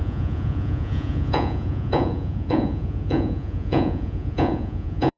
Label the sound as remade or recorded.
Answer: remade